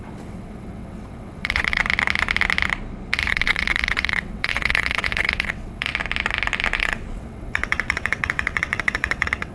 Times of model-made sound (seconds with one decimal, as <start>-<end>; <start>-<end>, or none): 0.0-1.8; 3.3-5.9; 6.8-9.5